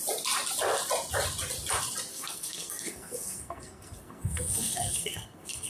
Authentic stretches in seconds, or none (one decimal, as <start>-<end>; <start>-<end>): 0.0-2.1